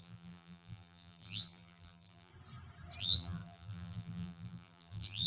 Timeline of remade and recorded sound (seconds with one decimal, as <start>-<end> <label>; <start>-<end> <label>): 0.0-2.3 remade; 2.3-3.0 recorded; 3.0-5.3 remade